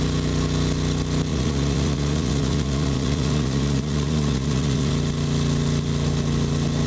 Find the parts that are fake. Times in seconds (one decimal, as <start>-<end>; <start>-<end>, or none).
1.3-4.9